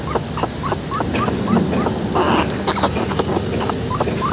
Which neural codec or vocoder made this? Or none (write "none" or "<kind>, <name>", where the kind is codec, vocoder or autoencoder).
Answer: none